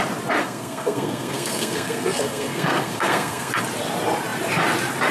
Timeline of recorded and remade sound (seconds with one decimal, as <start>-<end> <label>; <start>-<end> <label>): 0.0-0.4 recorded; 0.4-3.5 remade; 3.5-5.1 recorded